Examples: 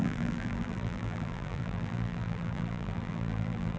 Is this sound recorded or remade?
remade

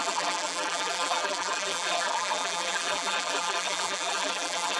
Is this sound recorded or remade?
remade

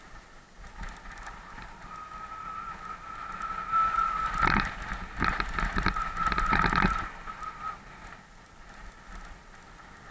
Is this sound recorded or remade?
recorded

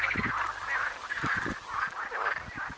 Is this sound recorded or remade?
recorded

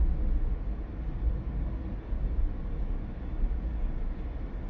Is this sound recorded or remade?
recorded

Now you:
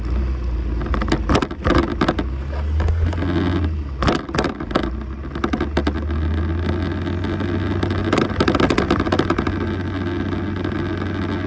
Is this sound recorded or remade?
recorded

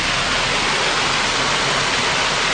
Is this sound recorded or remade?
recorded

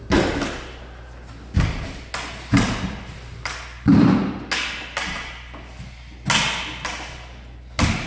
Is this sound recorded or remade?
recorded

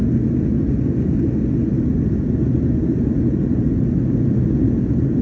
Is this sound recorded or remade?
recorded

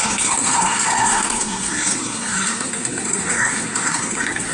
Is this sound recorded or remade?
remade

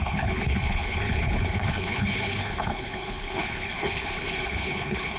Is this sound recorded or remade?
remade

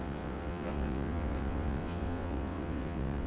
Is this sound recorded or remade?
remade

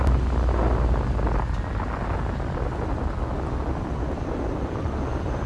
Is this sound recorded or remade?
recorded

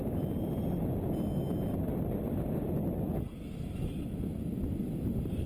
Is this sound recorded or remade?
recorded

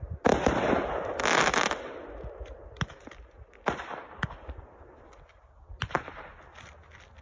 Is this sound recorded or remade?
recorded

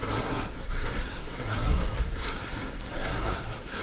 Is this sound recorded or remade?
remade